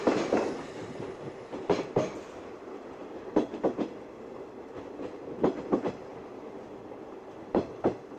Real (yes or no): yes